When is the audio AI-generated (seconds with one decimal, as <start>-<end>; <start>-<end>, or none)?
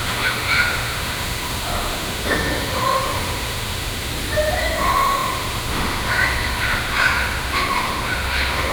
0.0-4.1; 4.6-8.7